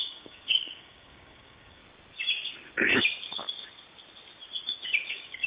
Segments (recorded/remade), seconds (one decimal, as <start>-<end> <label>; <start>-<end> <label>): 0.0-1.8 remade; 1.8-5.1 recorded; 5.1-5.5 remade